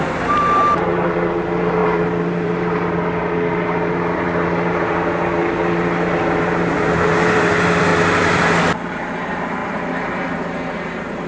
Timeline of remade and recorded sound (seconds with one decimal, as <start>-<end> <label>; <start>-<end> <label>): 0.0-7.9 remade; 7.9-8.9 recorded; 8.9-11.3 remade

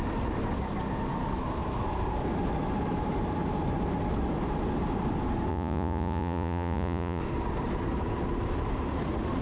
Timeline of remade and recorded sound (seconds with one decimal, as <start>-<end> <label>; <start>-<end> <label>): 0.0-5.5 recorded; 5.5-7.2 remade; 7.2-9.4 recorded

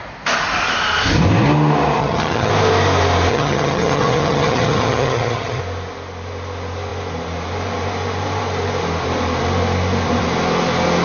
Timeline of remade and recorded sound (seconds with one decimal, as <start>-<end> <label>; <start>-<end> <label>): 0.0-2.0 recorded; 2.0-2.5 remade; 2.5-3.3 recorded; 3.3-5.6 remade; 5.6-11.0 recorded